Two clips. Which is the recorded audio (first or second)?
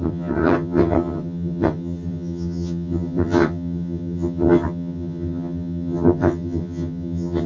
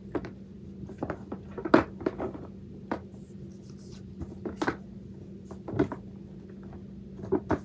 second